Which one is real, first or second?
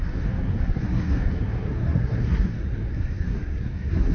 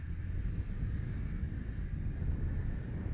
second